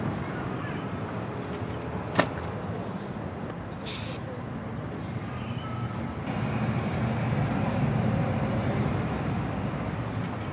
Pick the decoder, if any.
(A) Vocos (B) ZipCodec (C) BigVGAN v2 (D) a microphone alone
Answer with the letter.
D